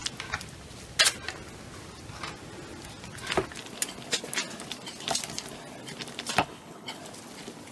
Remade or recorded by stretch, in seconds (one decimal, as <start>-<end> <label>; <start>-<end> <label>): 0.0-6.4 recorded; 6.4-7.0 remade; 7.0-7.7 recorded